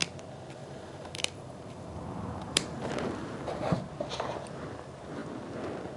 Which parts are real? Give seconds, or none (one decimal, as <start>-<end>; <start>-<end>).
0.0-0.6; 3.7-6.0